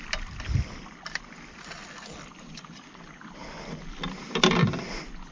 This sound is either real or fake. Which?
real